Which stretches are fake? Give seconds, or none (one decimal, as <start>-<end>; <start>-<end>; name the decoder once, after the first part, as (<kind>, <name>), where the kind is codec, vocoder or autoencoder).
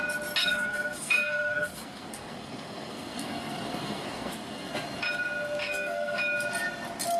0.4-4.7 (codec, SNAC); 5.6-6.2